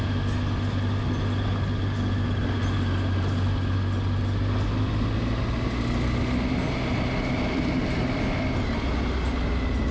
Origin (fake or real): real